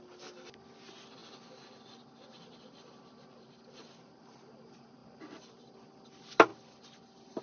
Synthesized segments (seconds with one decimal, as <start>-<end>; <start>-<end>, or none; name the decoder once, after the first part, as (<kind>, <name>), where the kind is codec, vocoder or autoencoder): none